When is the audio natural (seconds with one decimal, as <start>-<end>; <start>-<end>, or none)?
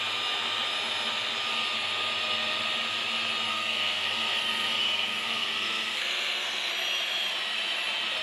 0.0-3.5; 6.7-8.2